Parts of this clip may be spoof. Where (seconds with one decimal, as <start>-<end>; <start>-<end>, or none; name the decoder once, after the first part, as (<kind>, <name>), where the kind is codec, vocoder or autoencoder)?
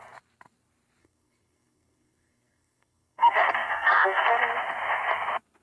1.0-4.4 (codec, SNAC)